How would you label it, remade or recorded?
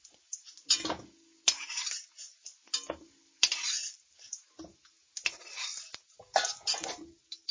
recorded